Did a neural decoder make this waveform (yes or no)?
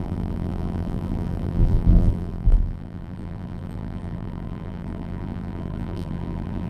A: yes